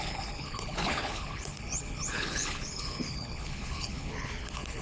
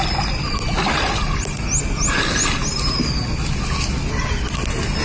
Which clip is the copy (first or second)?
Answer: first